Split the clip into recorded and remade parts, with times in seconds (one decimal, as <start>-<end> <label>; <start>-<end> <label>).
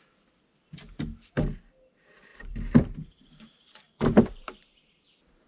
0.0-2.3 recorded; 2.3-4.9 remade; 4.9-5.5 recorded